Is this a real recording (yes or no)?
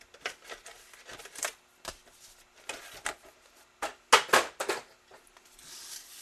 yes